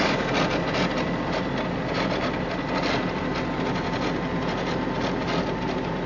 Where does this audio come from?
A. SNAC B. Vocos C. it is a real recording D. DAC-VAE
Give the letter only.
C